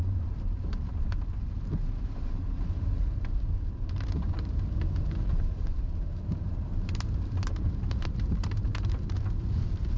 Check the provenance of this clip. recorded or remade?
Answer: remade